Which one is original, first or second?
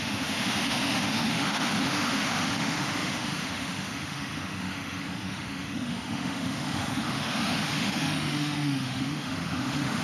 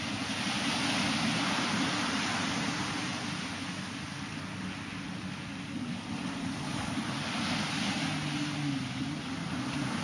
second